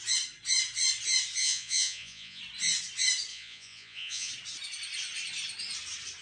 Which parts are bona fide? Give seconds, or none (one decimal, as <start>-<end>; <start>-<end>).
0.0-1.4; 2.4-3.3; 4.3-6.2